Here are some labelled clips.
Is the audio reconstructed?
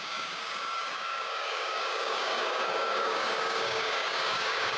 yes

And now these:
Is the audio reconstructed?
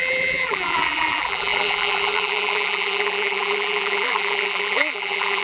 yes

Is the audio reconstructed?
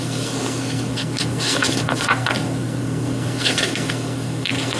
yes